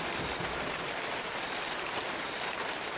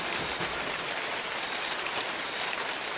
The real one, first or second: first